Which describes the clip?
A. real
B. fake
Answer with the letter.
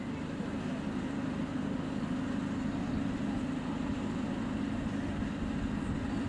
A